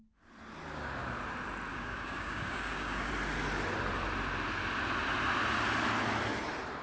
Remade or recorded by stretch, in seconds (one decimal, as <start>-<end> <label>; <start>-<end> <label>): 0.0-1.7 recorded; 1.7-3.1 remade; 3.1-6.8 recorded